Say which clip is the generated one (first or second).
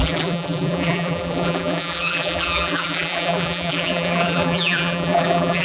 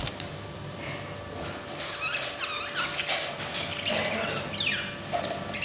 first